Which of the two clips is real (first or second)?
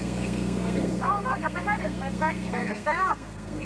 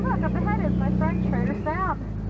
second